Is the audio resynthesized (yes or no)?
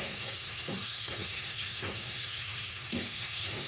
yes